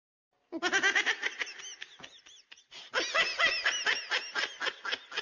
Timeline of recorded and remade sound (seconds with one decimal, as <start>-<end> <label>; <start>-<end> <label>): 0.0-5.2 recorded